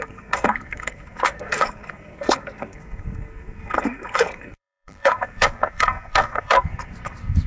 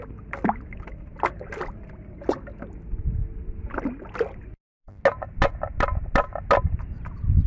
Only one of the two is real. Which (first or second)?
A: second